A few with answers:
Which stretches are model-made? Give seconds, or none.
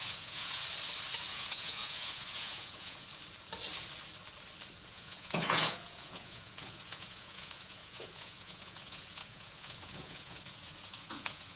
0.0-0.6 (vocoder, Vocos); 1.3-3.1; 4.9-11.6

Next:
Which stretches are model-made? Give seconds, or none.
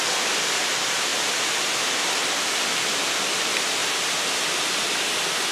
1.1-2.1 (vocoder, BigVGAN v2); 3.8-5.5